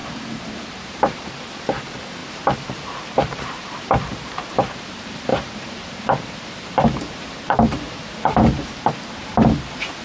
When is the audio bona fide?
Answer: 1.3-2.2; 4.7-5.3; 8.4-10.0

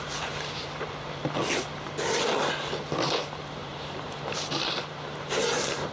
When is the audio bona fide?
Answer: 1.2-3.2

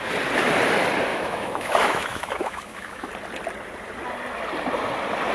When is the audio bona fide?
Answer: 0.0-1.1; 3.1-5.3

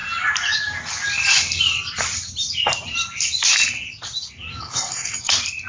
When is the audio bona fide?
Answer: 0.0-4.5; 5.3-5.7